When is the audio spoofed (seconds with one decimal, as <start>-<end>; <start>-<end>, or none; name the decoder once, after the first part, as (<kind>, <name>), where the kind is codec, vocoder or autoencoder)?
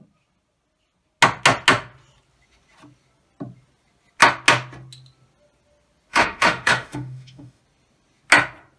6.1-7.6 (autoencoder, DAC-VAE)